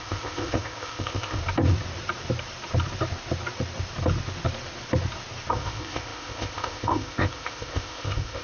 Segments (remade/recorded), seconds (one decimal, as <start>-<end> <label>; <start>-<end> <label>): 0.0-1.4 remade; 1.4-5.5 recorded; 5.5-8.4 remade